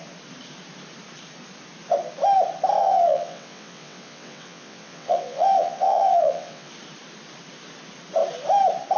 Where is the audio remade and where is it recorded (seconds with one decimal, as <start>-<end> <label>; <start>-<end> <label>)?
0.0-2.8 recorded; 2.8-6.7 remade; 6.7-9.0 recorded